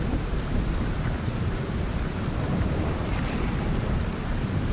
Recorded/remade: remade